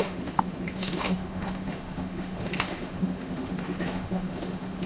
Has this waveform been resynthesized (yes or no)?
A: yes